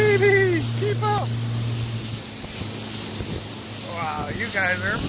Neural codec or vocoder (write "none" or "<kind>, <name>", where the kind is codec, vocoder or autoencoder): none